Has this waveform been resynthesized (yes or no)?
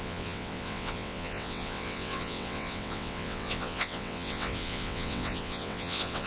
yes